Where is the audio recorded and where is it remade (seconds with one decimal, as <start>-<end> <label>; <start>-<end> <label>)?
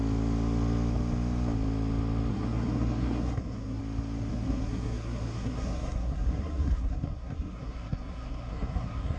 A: 0.0-2.3 recorded; 2.3-3.8 remade; 3.8-4.3 recorded; 4.3-9.2 remade